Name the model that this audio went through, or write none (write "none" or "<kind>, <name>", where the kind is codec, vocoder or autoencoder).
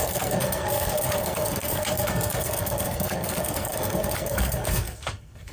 codec, SNAC